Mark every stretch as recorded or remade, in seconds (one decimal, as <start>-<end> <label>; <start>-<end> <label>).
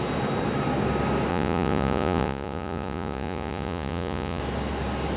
0.0-1.3 recorded; 1.3-4.4 remade; 4.4-5.2 recorded